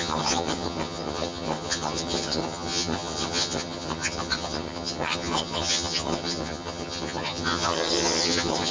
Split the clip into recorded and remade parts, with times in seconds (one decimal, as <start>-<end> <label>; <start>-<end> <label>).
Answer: 0.0-8.7 remade

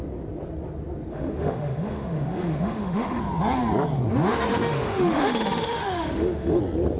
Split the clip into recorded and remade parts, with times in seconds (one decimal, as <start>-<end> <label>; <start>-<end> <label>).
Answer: 0.0-1.1 recorded; 1.1-3.2 remade; 3.2-4.5 recorded; 4.5-6.6 remade; 6.6-7.0 recorded

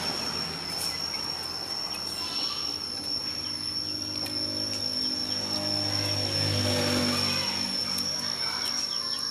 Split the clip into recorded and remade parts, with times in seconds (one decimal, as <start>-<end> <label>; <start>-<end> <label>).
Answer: 0.0-9.3 recorded

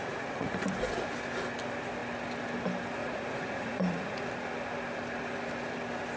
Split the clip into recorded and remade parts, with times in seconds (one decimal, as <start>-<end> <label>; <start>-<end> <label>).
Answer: 0.0-0.9 remade; 0.9-3.0 recorded; 3.0-4.3 remade; 4.3-6.2 recorded

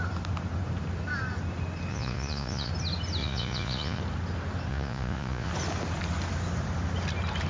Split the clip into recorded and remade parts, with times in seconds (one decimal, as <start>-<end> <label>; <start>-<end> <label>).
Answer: 0.0-1.9 recorded; 1.9-2.7 remade; 2.7-3.2 recorded; 3.2-4.0 remade; 4.0-4.7 recorded; 4.7-5.5 remade; 5.5-7.5 recorded

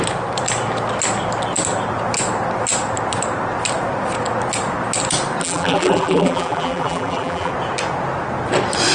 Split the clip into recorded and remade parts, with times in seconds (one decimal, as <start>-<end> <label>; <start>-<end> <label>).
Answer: 0.0-5.4 recorded; 5.4-7.5 remade; 7.5-8.9 recorded

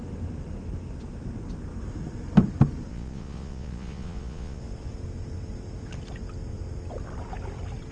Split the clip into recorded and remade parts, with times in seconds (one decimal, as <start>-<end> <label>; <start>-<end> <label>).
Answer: 0.0-2.9 recorded; 2.9-4.6 remade; 4.6-7.9 recorded